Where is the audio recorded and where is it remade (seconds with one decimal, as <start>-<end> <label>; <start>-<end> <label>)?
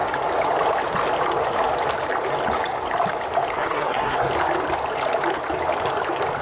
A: 0.0-3.5 recorded; 3.5-4.3 remade; 4.3-6.4 recorded